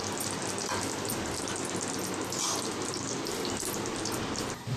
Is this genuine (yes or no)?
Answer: yes